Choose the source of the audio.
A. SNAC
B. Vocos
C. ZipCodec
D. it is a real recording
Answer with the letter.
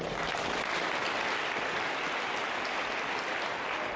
D